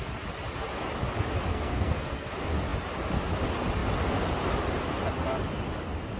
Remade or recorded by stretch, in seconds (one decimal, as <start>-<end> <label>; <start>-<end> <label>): 0.0-1.5 recorded; 1.5-2.3 remade; 2.3-6.2 recorded